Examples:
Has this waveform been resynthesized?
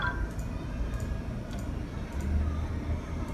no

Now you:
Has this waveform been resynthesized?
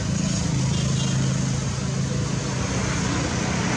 no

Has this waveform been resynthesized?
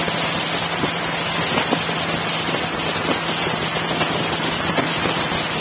no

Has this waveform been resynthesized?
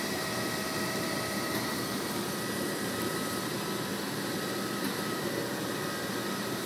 yes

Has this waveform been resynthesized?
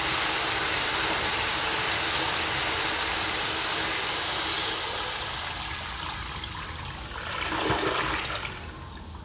no